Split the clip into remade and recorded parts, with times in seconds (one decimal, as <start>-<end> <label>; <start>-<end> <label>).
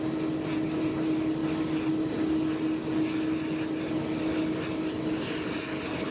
0.0-6.1 recorded